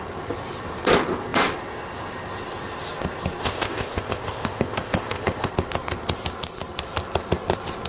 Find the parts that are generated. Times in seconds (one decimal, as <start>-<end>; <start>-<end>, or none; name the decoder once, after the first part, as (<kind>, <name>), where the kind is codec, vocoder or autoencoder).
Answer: 3.4-5.5 (codec, ZipCodec)